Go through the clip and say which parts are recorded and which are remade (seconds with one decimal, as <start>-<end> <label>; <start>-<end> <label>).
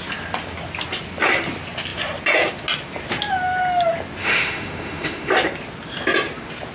0.0-4.2 recorded; 4.2-5.3 remade; 5.3-6.7 recorded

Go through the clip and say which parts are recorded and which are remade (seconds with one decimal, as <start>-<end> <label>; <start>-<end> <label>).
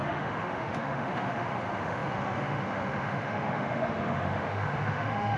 0.0-5.4 remade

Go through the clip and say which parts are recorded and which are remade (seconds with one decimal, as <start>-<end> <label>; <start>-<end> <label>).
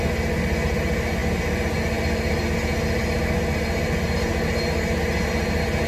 0.0-5.9 recorded